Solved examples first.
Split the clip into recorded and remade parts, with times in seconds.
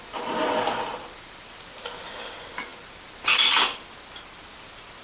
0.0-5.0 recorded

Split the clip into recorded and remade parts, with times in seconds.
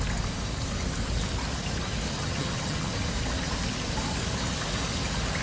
0.0-2.2 recorded; 2.2-2.8 remade; 2.8-5.4 recorded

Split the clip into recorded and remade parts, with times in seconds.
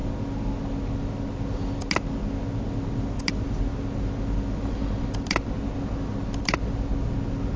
0.0-7.6 recorded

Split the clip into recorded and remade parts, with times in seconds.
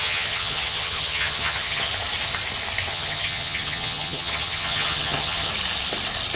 0.0-1.9 remade; 1.9-2.9 recorded; 2.9-5.5 remade; 5.5-6.4 recorded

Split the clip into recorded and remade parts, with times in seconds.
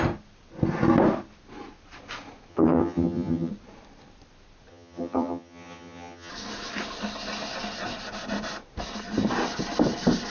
0.0-2.5 recorded; 2.5-3.5 remade; 3.5-4.7 recorded; 4.7-6.3 remade; 6.3-10.3 recorded